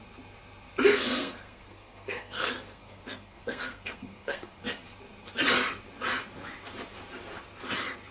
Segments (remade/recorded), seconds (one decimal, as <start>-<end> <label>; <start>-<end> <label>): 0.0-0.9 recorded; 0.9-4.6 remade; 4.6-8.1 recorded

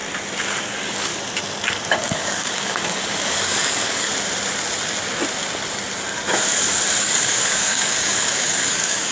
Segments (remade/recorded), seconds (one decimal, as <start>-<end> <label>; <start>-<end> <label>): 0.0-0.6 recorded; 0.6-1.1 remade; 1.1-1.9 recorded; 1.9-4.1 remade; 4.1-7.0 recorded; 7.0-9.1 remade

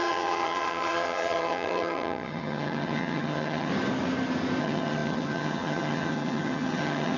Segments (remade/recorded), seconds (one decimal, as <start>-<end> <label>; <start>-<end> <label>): 0.0-3.7 remade; 3.7-4.6 recorded; 4.6-7.2 remade

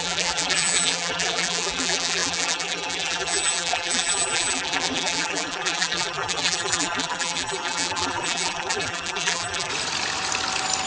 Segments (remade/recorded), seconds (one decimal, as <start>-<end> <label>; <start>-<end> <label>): 0.0-9.7 remade; 9.7-10.9 recorded

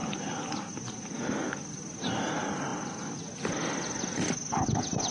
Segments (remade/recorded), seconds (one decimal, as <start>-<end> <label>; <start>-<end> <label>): 0.0-5.1 recorded

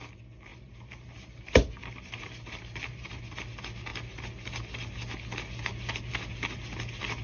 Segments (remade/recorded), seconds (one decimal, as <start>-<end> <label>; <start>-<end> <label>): 0.0-0.5 recorded; 0.5-1.4 remade; 1.4-1.8 recorded; 1.8-3.2 remade; 3.2-7.2 recorded

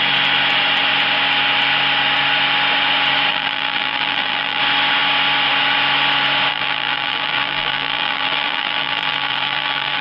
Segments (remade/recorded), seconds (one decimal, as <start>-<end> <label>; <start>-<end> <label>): 0.0-3.3 recorded; 3.3-4.6 remade; 4.6-6.5 recorded; 6.5-10.0 remade

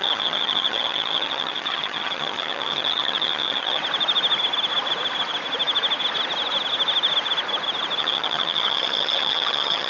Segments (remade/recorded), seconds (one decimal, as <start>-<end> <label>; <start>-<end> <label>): 0.0-3.8 remade; 3.8-8.0 recorded; 8.0-9.9 remade